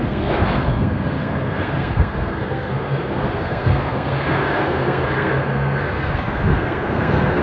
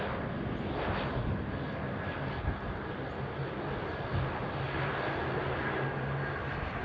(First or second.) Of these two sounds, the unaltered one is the second